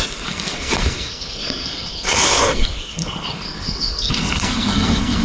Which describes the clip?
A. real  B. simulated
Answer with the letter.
B